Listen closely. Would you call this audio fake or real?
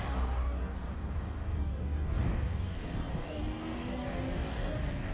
fake